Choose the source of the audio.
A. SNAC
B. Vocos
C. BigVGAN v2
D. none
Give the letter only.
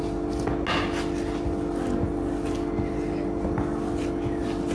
D